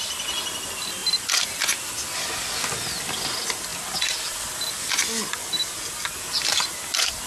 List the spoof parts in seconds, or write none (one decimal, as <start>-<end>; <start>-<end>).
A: none